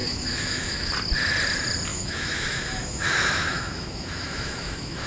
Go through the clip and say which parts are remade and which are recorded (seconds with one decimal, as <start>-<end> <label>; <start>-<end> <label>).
0.0-0.9 remade; 0.9-1.9 recorded; 1.9-5.1 remade

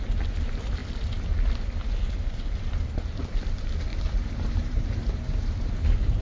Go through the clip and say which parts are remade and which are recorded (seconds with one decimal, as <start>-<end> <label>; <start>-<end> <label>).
0.0-3.9 recorded; 3.9-5.8 remade; 5.8-6.2 recorded